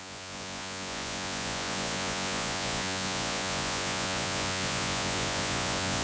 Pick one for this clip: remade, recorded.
remade